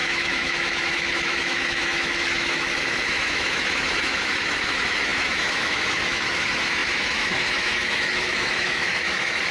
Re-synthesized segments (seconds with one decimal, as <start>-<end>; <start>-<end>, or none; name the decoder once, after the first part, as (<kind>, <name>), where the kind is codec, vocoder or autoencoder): 0.0-9.5 (autoencoder, DAC-VAE)